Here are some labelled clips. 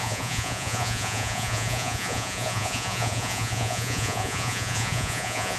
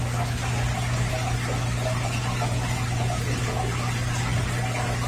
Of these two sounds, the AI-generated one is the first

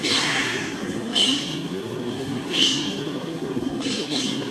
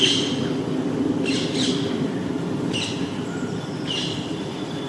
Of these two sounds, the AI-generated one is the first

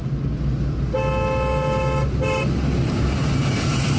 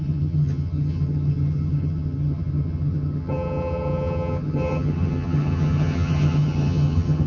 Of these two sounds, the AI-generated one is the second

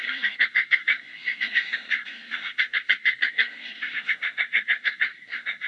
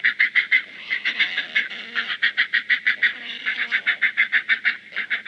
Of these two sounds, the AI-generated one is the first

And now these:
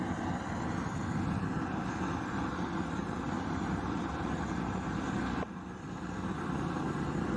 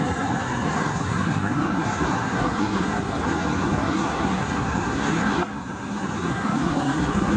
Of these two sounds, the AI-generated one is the second